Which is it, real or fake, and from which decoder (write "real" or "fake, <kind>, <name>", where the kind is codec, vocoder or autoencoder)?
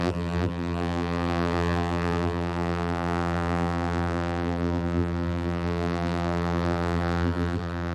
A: fake, vocoder, BigVGAN v2